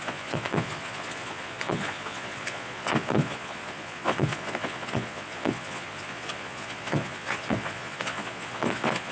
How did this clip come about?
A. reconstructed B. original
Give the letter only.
A